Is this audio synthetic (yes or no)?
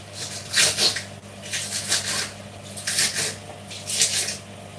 no